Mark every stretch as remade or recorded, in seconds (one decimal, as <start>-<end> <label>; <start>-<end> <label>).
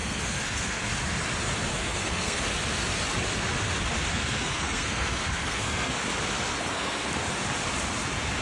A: 0.0-0.9 remade; 0.9-1.7 recorded; 1.7-2.4 remade; 2.4-4.1 recorded; 4.1-5.9 remade; 5.9-6.5 recorded; 6.5-7.1 remade; 7.1-8.4 recorded